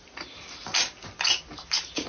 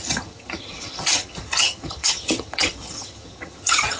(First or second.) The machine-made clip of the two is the second